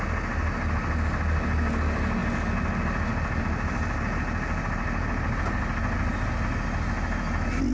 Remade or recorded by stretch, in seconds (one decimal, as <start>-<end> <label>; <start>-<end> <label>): 0.0-7.7 recorded

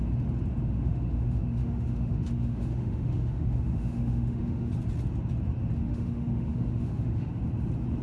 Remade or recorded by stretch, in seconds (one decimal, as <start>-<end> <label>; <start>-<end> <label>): 0.0-0.6 recorded; 0.6-4.7 remade; 4.7-5.8 recorded; 5.8-7.4 remade; 7.4-8.0 recorded

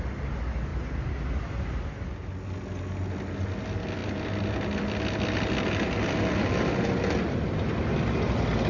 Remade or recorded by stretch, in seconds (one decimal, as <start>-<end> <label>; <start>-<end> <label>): 0.0-8.7 recorded

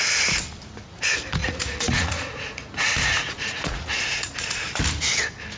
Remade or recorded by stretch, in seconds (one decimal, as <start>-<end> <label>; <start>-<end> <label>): 0.0-1.4 recorded; 1.4-4.8 remade; 4.8-5.6 recorded

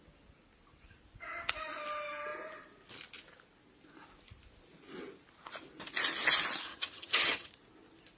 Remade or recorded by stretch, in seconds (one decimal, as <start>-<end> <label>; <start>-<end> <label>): 0.0-6.7 recorded; 6.7-7.5 remade; 7.5-8.2 recorded

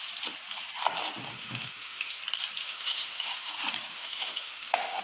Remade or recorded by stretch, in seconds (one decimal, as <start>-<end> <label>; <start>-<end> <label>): 0.0-1.3 recorded; 1.3-2.2 remade; 2.2-2.6 recorded; 2.6-3.5 remade; 3.5-3.9 recorded; 3.9-5.0 remade

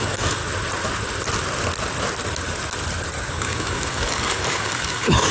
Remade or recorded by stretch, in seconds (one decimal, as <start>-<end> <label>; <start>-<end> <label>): 0.0-0.4 remade; 0.4-3.3 recorded; 3.3-5.3 remade

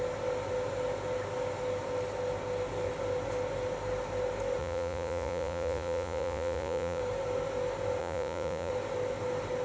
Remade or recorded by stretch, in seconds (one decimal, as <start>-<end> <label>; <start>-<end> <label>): 0.0-4.6 recorded; 4.6-7.0 remade; 7.0-8.0 recorded; 8.0-8.7 remade; 8.7-9.6 recorded